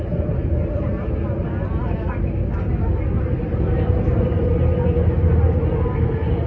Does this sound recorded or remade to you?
recorded